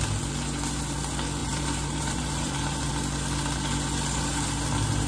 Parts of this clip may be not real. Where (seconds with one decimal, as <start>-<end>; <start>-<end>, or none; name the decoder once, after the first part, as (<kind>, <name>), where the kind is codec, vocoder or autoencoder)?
1.4-2.9 (vocoder, BigVGAN v2)